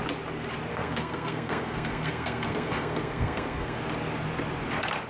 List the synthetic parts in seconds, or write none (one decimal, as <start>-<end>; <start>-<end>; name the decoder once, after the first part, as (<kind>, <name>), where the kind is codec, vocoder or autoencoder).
0.7-3.8 (codec, SNAC)